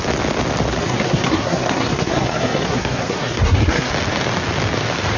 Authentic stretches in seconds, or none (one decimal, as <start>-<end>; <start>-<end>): 0.0-0.8; 3.9-5.2